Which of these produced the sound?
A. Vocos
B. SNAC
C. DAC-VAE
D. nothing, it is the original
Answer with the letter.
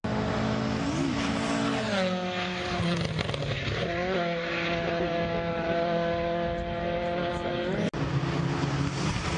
D